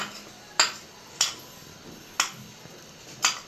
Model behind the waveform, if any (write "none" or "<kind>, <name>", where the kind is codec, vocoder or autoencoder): none